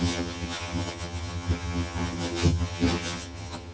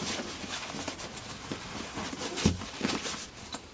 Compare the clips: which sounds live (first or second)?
second